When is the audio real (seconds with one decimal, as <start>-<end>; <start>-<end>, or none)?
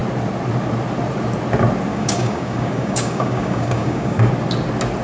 0.0-1.9; 4.3-5.0